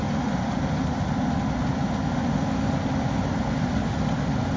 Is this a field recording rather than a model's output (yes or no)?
yes